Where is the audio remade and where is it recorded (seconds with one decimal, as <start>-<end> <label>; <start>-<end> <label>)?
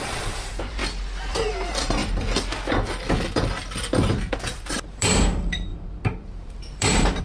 0.0-0.8 remade; 0.8-1.3 recorded; 1.3-2.0 remade; 2.0-4.1 recorded; 4.1-7.2 remade